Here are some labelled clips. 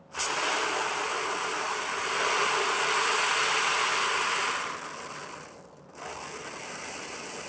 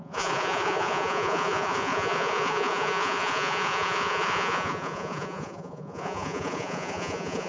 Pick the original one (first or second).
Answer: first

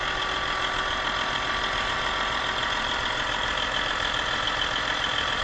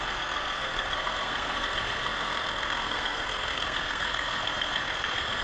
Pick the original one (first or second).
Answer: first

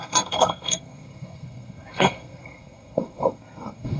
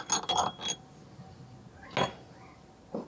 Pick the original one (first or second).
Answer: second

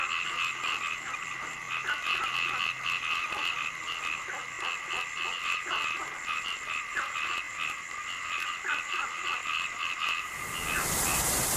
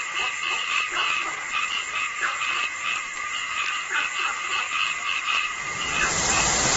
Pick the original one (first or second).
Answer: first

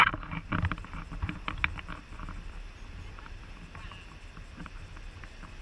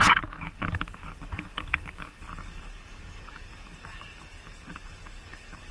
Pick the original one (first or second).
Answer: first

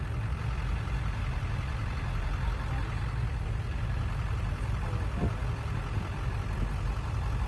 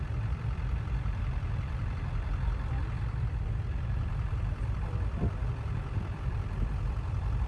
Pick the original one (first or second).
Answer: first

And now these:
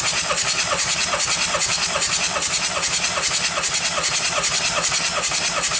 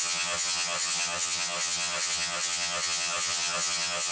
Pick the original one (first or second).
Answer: first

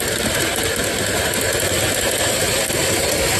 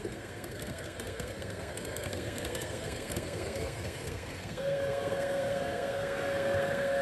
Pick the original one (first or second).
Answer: first